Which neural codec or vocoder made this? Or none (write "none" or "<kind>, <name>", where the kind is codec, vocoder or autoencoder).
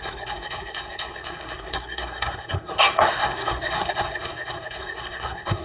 codec, SNAC